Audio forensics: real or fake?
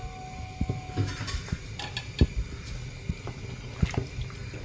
real